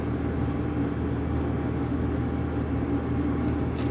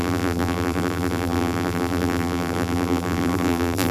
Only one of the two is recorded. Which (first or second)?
first